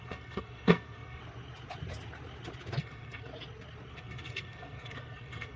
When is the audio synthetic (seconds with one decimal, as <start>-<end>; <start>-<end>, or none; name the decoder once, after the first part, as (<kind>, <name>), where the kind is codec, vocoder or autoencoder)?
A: 0.0-1.2 (codec, SNAC); 2.8-3.3; 3.9-5.6